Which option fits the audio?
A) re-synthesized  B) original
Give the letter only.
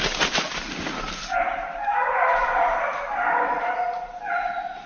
B